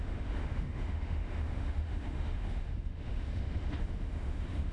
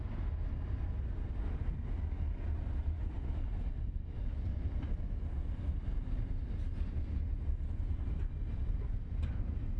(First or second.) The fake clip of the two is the first